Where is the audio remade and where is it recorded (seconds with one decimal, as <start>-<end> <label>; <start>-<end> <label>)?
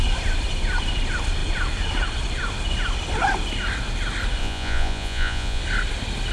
0.0-4.4 recorded; 4.4-5.6 remade; 5.6-6.3 recorded